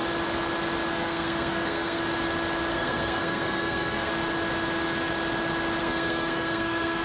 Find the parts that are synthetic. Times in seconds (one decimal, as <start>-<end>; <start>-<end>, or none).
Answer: 0.9-2.0; 2.7-4.1; 5.8-7.0